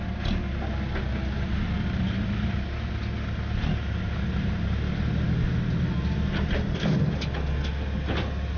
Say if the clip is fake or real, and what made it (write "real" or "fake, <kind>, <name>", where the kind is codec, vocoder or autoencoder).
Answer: real